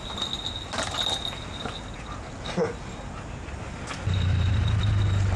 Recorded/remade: recorded